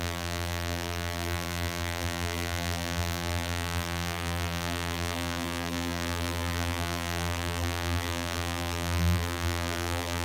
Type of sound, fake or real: fake